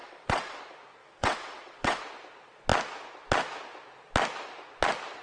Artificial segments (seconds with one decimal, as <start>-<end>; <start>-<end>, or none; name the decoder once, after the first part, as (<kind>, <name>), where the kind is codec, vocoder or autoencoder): 0.0-0.6 (vocoder, WaveNeXt); 1.0-2.0